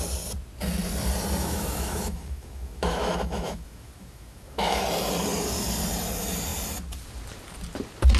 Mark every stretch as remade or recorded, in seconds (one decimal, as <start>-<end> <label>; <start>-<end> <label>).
0.0-1.4 recorded; 1.4-4.8 remade; 4.8-8.2 recorded